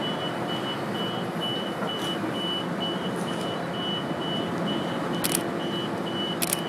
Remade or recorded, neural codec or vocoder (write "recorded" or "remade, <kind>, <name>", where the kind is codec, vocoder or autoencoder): recorded